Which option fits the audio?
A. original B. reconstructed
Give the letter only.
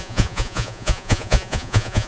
B